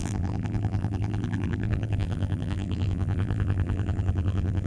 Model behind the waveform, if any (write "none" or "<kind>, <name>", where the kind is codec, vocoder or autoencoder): vocoder, BigVGAN v2